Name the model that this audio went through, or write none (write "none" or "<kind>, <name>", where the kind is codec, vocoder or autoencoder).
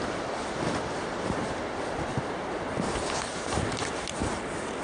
vocoder, BigVGAN v2